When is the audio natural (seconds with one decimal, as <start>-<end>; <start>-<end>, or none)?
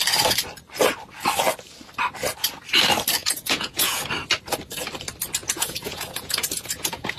0.0-3.2; 4.0-5.4